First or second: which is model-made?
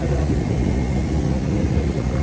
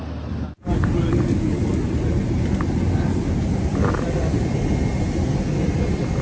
first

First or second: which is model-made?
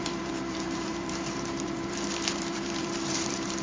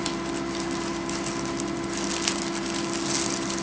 first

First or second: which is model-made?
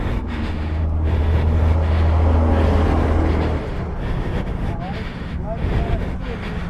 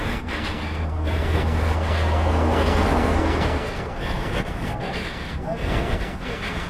second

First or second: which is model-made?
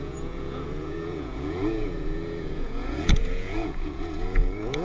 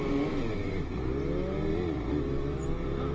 first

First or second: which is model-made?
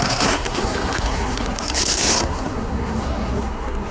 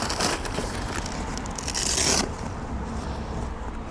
first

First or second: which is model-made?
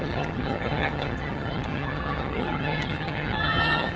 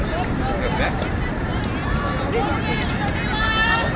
first